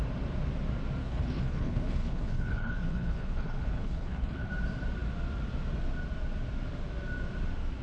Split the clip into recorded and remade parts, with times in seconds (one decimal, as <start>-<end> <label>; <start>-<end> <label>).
0.0-1.0 recorded; 1.0-4.5 remade; 4.5-7.8 recorded